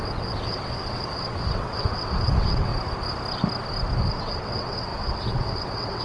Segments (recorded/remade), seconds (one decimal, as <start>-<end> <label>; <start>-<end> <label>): 0.0-2.7 remade; 2.7-4.1 recorded; 4.1-6.0 remade